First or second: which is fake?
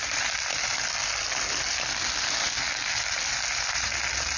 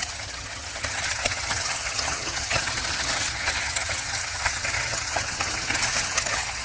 second